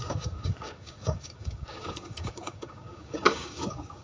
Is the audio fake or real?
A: fake